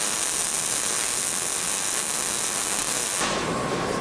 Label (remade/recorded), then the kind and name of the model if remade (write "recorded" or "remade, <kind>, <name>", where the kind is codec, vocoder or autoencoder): recorded